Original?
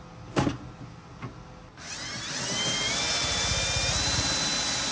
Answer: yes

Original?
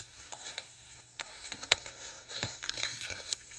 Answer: no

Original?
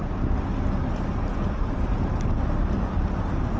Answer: yes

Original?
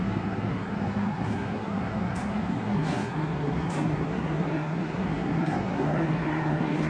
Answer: no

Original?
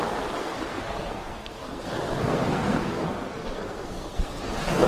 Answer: no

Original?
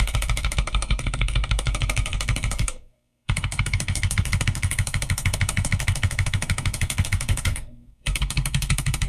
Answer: no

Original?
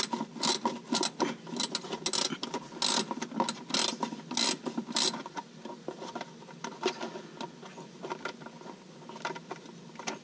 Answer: yes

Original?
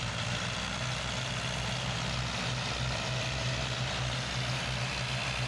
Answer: yes